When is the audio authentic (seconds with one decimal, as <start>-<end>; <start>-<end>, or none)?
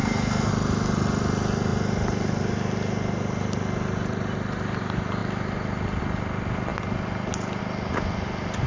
0.5-8.7